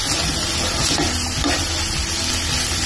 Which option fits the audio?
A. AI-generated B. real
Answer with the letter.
B